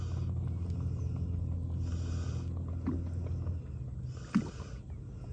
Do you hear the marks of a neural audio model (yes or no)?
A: no